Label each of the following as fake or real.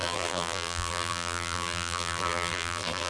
fake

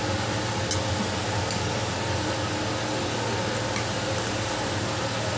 real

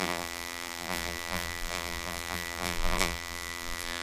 fake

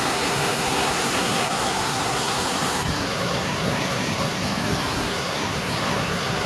fake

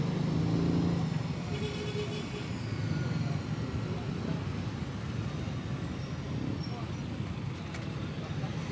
real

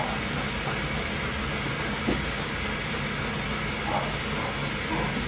real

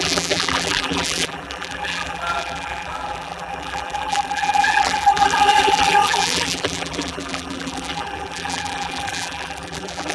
fake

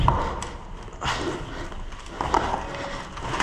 real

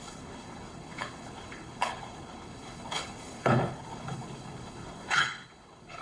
fake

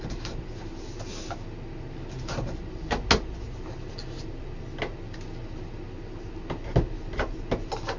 real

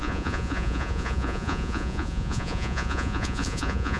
fake